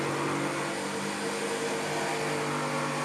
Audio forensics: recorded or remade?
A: recorded